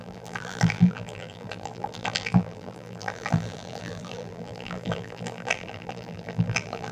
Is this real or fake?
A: fake